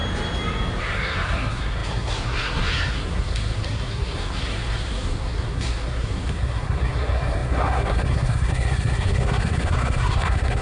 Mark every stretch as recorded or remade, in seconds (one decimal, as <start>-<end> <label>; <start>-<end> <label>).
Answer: 0.0-0.8 recorded; 0.8-10.6 remade